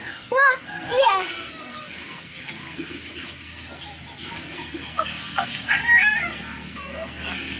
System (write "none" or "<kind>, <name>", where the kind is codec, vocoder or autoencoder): codec, SNAC